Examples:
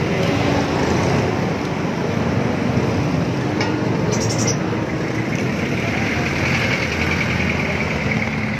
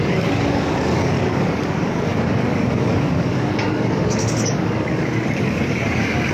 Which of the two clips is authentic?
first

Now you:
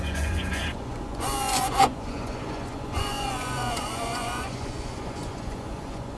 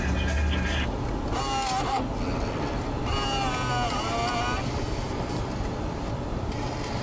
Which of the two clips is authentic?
second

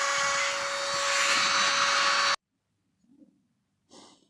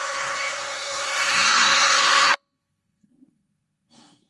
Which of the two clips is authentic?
first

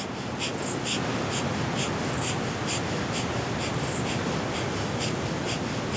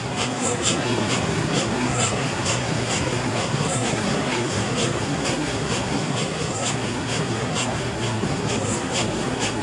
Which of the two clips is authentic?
first